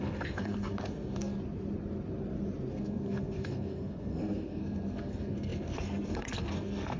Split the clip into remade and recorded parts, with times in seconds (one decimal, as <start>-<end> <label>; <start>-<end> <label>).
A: 0.0-1.4 remade; 1.4-2.7 recorded; 2.7-7.0 remade